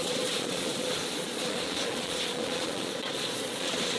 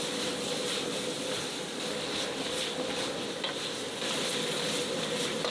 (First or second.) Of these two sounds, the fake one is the first